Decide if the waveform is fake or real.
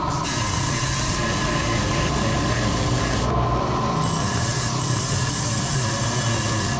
real